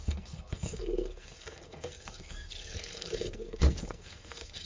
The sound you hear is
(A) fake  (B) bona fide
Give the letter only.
A